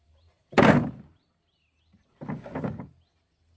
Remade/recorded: recorded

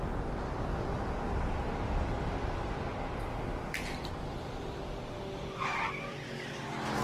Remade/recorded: recorded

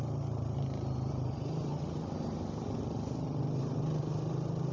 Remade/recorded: recorded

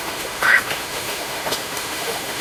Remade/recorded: remade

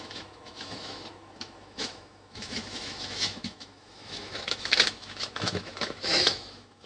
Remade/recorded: remade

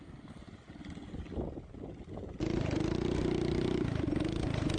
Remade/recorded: recorded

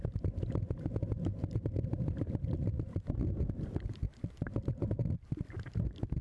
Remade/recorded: recorded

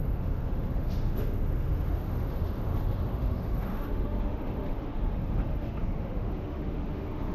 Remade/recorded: remade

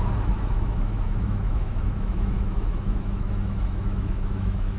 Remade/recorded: remade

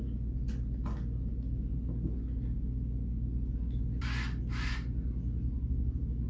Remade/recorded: recorded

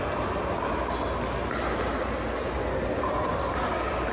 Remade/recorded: recorded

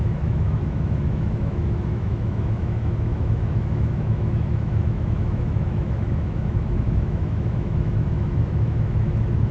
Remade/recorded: remade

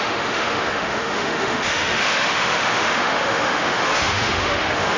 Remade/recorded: remade